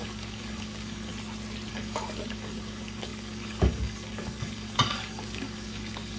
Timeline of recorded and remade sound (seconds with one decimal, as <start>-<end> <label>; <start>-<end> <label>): 0.0-1.1 remade; 1.1-1.7 recorded; 1.7-6.2 remade